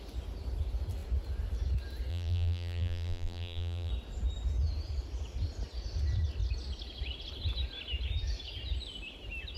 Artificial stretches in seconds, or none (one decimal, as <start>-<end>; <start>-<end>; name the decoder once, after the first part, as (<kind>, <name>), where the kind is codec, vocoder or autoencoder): 2.1-3.9 (vocoder, BigVGAN v2)